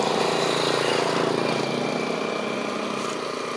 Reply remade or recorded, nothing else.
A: recorded